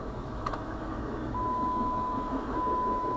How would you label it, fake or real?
fake